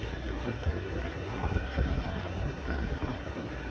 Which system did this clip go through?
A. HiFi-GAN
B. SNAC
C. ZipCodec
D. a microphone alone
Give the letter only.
B